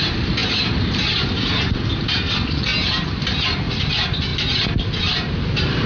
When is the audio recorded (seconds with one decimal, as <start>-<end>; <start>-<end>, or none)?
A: 4.3-5.0